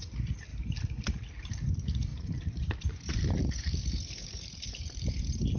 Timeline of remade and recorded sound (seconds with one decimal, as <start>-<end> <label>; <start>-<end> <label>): 0.0-2.1 recorded; 2.1-5.6 remade